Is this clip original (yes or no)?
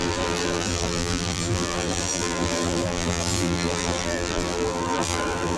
no